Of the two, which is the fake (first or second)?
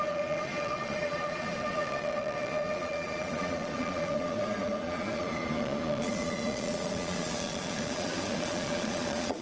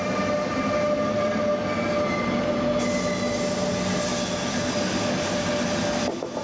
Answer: first